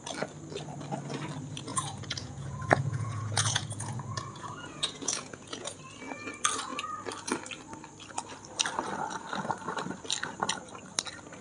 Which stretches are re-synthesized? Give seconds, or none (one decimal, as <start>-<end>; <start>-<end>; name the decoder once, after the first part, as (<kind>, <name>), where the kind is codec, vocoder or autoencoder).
1.7-5.8 (vocoder, Vocos)